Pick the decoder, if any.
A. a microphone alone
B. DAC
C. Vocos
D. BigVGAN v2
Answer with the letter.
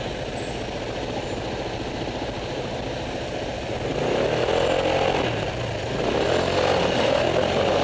A